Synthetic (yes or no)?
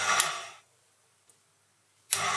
no